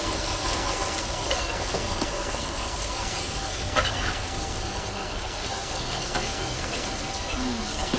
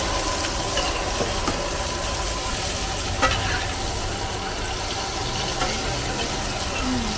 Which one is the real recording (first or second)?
second